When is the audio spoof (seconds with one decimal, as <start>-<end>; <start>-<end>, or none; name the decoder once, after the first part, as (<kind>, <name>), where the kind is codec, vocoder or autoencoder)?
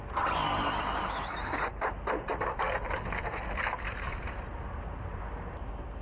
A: none